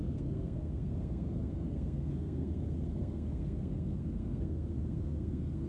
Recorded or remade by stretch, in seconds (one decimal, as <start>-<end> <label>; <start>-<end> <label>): 0.0-5.7 remade